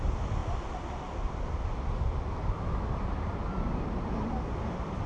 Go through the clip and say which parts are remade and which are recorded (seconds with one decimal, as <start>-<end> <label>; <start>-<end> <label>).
0.0-5.1 recorded